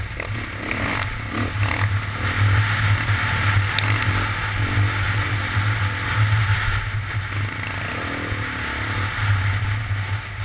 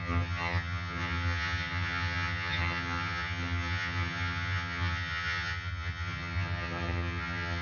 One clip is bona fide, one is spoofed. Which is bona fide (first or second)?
first